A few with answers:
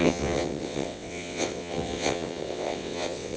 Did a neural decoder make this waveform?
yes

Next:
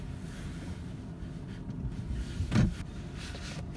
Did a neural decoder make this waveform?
no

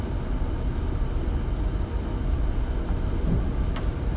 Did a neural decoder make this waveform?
no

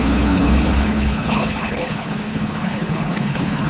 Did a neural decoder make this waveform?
yes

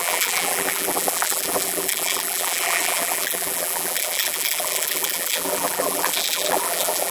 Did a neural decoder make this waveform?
yes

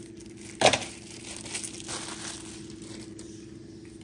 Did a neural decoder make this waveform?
no